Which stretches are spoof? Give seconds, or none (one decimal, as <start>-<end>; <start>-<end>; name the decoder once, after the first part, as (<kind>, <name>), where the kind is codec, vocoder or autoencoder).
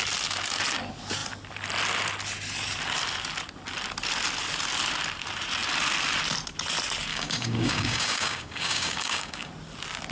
7.1-9.5 (codec, DAC)